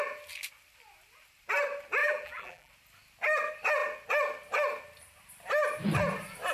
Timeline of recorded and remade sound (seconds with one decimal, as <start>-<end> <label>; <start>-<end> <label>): 0.0-2.0 recorded; 2.0-2.7 remade; 2.7-6.5 recorded